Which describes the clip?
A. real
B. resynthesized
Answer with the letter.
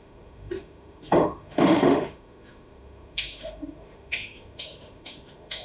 B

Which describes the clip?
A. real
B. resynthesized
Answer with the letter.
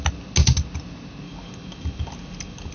A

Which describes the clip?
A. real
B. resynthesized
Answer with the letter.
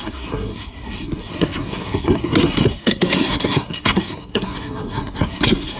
B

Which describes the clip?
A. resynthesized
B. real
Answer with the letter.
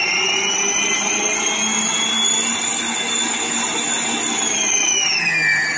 B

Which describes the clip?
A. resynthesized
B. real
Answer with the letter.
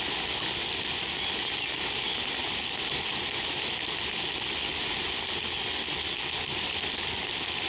B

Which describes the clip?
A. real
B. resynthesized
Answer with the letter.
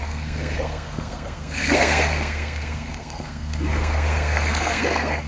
B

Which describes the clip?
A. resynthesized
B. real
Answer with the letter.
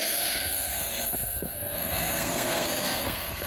A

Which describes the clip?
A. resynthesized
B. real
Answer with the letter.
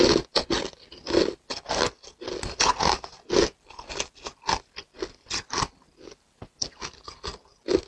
B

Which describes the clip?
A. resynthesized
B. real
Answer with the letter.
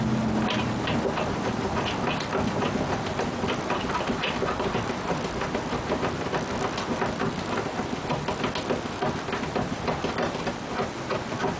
B